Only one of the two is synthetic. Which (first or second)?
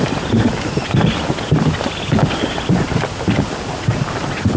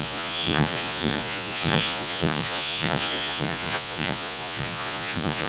second